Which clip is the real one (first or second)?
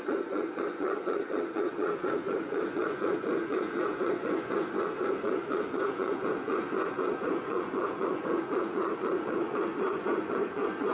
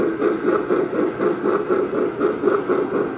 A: second